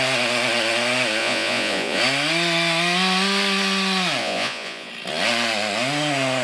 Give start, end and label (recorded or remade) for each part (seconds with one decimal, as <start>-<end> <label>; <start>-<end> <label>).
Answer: 0.0-1.2 recorded; 1.2-2.0 remade; 2.0-4.2 recorded; 4.2-4.9 remade; 4.9-6.4 recorded